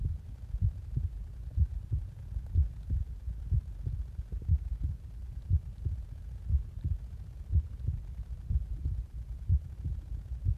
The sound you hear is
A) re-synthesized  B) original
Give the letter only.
B